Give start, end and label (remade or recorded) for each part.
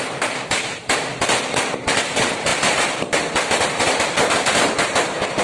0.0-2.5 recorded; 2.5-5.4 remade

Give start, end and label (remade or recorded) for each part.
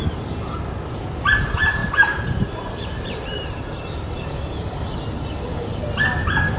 0.0-1.8 recorded; 1.8-4.0 remade; 4.0-6.6 recorded